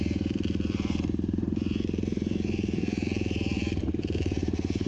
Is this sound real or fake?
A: fake